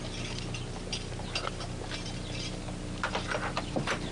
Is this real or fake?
real